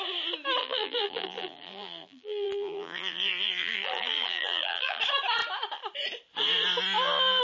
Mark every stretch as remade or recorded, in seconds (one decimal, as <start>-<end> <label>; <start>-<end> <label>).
0.0-0.6 recorded; 0.6-5.0 remade; 5.0-7.4 recorded